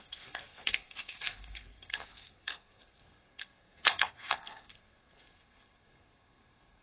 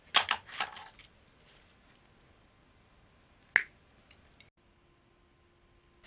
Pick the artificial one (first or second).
first